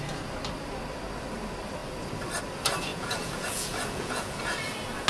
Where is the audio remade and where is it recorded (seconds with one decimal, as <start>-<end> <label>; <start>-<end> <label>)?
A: 0.0-2.9 recorded; 2.9-4.4 remade; 4.4-5.1 recorded